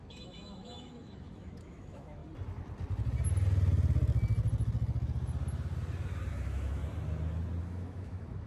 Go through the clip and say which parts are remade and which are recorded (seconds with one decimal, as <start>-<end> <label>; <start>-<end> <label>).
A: 0.0-2.2 remade; 2.2-6.3 recorded; 6.3-6.8 remade; 6.8-7.6 recorded; 7.6-8.5 remade